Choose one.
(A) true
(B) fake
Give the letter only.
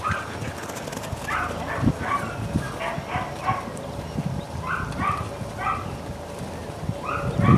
A